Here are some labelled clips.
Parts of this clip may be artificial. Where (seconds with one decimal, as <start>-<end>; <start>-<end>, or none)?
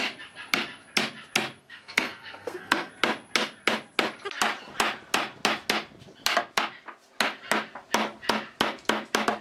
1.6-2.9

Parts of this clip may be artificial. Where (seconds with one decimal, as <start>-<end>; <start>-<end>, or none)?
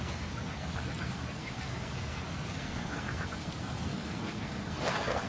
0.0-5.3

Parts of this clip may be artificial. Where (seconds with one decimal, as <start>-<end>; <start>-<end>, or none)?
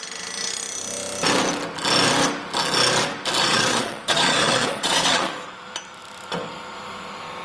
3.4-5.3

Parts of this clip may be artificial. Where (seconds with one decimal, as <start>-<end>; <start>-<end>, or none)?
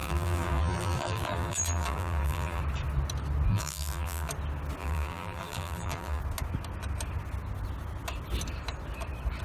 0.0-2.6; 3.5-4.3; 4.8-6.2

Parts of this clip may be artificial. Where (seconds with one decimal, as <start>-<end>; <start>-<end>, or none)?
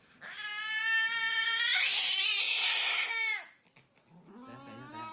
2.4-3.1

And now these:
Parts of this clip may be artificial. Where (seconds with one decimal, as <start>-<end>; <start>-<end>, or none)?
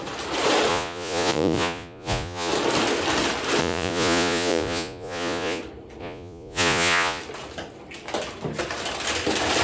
0.7-2.5; 3.6-5.6; 6.0-7.2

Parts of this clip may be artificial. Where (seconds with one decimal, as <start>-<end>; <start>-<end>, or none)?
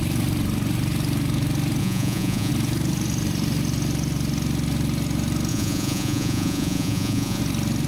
1.8-2.5; 5.5-7.4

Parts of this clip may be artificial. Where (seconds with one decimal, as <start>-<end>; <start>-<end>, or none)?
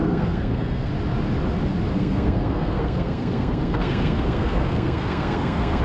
0.0-0.9; 1.9-5.8